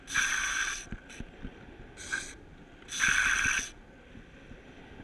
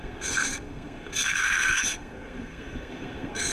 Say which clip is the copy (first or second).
second